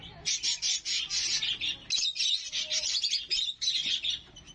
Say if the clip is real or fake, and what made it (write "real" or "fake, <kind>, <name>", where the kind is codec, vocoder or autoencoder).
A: real